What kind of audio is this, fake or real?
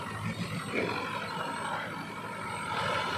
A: real